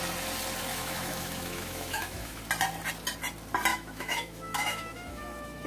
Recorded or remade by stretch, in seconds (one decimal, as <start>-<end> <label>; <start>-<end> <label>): 0.0-0.7 recorded; 0.7-2.4 remade; 2.4-3.7 recorded; 3.7-5.7 remade